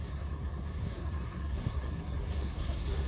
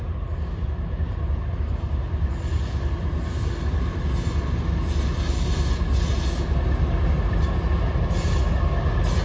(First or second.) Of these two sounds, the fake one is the first